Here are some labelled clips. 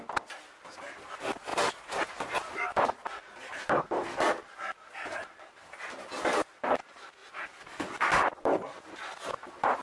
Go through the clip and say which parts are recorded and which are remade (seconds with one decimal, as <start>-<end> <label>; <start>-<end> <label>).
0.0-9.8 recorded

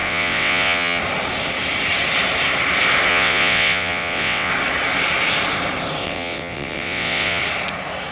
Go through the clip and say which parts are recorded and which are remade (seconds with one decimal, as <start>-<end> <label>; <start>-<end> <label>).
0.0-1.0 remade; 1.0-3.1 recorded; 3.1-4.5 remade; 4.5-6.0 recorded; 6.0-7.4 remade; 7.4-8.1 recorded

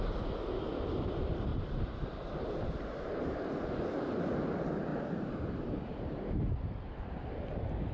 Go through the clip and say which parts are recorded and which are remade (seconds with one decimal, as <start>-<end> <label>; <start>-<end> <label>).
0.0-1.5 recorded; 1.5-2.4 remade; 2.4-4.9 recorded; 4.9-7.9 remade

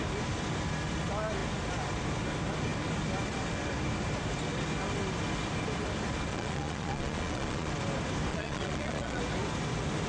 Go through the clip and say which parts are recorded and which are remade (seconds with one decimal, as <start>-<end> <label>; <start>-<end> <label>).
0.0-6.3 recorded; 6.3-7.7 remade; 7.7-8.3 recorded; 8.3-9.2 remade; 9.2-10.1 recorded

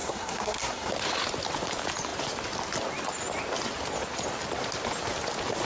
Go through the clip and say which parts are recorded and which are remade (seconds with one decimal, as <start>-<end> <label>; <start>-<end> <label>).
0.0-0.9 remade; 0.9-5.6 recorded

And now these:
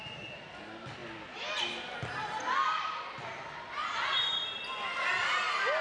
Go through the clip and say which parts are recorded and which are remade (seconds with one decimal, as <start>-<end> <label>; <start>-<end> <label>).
0.0-5.8 recorded